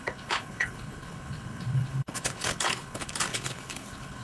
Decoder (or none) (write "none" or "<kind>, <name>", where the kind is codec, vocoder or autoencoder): codec, HILCodec